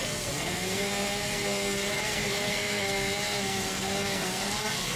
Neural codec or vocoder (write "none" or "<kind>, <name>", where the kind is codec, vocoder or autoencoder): codec, SNAC